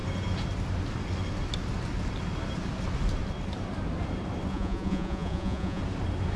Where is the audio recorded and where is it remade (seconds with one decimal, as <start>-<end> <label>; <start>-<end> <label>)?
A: 0.0-4.5 recorded; 4.5-5.8 remade; 5.8-6.4 recorded